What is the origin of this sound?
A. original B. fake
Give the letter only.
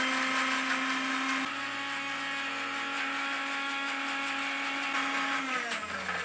A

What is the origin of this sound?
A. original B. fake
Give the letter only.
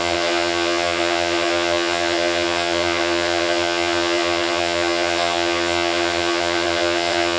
B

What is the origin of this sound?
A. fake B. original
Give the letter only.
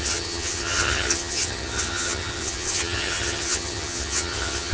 A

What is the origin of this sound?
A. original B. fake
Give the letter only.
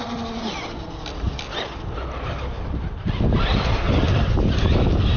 A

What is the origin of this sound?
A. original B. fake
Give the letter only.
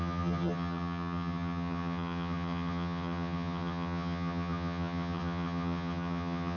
B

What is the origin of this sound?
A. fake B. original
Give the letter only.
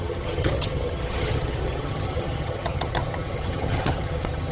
A